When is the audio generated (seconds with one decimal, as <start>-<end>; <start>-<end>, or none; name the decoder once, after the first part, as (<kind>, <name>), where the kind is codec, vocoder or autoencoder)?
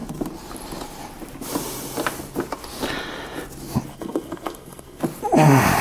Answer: 3.9-5.0 (codec, SNAC)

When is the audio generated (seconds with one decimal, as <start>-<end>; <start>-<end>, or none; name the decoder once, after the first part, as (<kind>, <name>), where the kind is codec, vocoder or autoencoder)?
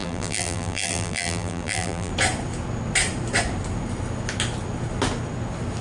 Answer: 0.0-2.1 (vocoder, BigVGAN v2)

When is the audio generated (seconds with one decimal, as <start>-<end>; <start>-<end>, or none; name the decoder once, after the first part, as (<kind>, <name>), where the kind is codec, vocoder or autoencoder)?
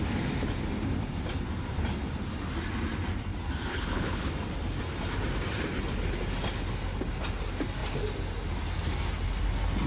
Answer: 3.7-4.3 (codec, HILCodec)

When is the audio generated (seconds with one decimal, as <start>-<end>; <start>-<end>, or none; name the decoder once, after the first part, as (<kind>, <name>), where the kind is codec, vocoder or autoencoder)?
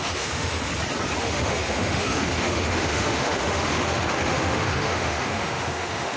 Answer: 0.0-0.7 (autoencoder, DAC-VAE); 1.2-6.2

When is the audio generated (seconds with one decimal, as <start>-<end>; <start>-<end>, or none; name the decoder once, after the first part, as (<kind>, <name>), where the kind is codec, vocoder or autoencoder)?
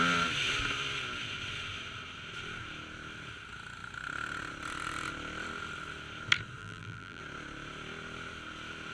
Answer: 6.6-7.2 (vocoder, BigVGAN v2)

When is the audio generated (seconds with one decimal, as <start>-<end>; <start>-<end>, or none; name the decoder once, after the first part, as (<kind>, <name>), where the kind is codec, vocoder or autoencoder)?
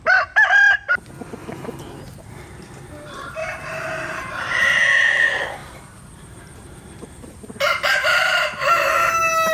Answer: 1.4-2.2 (vocoder, BigVGAN v2); 3.4-4.6; 5.6-8.9